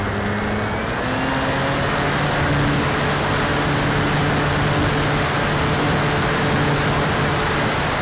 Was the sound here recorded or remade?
recorded